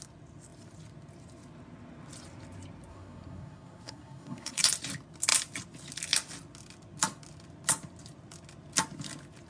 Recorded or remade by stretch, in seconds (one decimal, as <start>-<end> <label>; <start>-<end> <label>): 0.0-2.9 recorded; 2.9-4.6 remade; 4.6-9.5 recorded